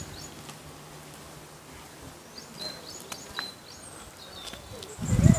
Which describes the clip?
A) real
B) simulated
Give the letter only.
A